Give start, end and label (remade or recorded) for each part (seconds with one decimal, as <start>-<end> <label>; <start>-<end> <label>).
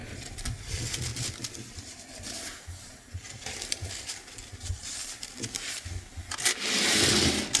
0.0-0.5 recorded; 0.5-6.1 remade; 6.1-7.1 recorded; 7.1-7.6 remade